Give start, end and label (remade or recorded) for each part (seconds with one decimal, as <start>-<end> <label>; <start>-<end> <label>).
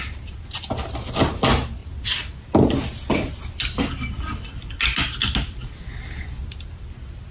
0.0-7.3 recorded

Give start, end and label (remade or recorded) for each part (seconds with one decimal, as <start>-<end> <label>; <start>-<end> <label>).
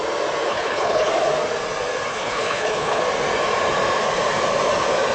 0.0-0.5 recorded; 0.5-1.1 remade; 1.1-2.1 recorded; 2.1-3.0 remade; 3.0-5.1 recorded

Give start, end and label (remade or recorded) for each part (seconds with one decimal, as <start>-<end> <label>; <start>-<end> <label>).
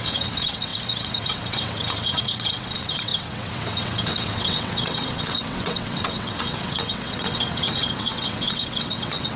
0.0-9.4 remade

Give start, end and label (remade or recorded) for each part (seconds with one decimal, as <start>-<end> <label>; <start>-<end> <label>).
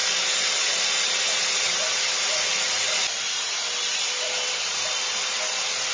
0.0-5.9 recorded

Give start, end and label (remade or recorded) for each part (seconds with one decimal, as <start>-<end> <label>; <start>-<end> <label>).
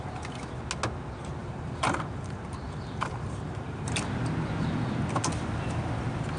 0.0-1.4 recorded; 1.4-4.3 remade; 4.3-6.4 recorded